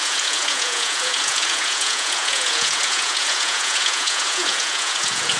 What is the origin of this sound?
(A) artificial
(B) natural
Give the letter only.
A